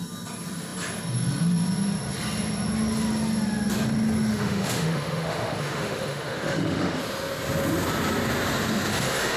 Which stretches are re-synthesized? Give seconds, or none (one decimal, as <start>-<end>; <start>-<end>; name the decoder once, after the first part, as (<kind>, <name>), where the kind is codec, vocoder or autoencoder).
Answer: 4.3-7.0 (autoencoder, DAC-VAE); 8.9-9.4